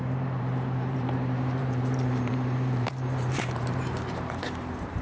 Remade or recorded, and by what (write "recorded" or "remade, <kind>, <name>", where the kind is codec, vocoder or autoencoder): remade, vocoder, BigVGAN v2